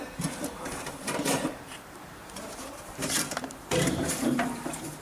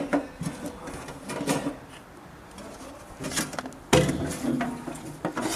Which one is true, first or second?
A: second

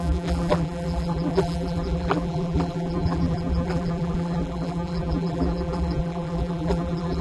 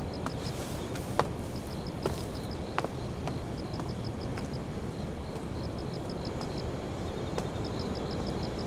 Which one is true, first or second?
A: second